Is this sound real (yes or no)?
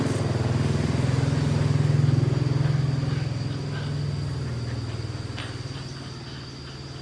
yes